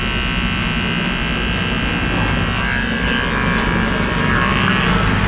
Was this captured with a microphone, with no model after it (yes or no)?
yes